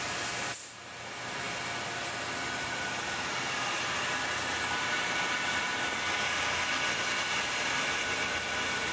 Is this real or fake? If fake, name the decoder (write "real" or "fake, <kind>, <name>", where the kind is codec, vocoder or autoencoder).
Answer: real